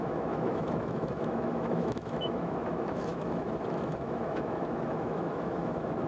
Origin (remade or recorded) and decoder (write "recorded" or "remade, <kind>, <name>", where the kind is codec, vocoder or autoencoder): remade, autoencoder, DAC-VAE